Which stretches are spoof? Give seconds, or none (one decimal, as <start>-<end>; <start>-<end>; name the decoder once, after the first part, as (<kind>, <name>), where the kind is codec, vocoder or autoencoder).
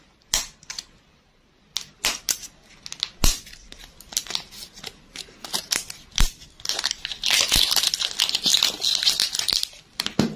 none